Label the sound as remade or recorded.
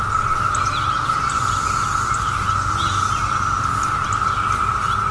recorded